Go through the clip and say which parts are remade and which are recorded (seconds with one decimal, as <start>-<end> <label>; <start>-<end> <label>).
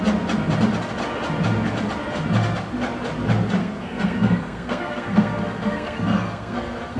0.0-3.6 recorded; 3.6-7.0 remade